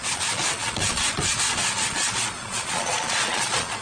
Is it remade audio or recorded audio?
remade